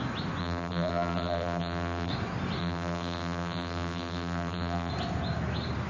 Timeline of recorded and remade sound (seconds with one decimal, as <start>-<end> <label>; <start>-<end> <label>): 0.0-0.4 recorded; 0.4-2.1 remade; 2.1-2.6 recorded; 2.6-4.9 remade; 4.9-5.9 recorded